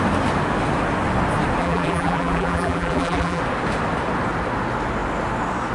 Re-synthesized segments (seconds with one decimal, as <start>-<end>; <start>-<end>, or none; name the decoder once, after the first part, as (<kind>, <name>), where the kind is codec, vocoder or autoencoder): 1.6-3.4 (vocoder, BigVGAN v2)